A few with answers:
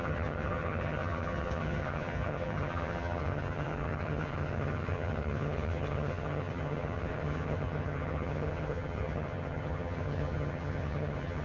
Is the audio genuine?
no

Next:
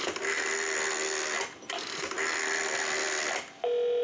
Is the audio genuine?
yes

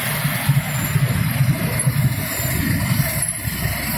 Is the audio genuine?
yes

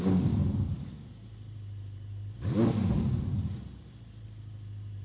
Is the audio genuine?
yes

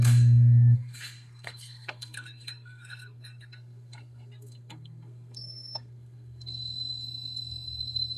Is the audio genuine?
no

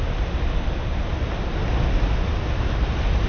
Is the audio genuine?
yes